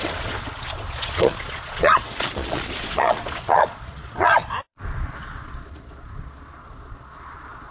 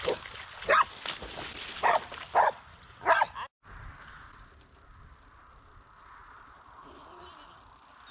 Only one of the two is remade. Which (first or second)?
first